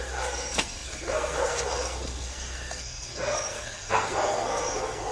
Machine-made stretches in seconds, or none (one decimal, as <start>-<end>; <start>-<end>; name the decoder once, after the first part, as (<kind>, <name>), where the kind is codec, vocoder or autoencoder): 0.0-5.1 (codec, SNAC)